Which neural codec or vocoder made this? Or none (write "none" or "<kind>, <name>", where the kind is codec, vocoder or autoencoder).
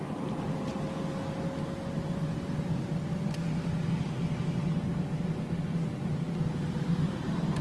none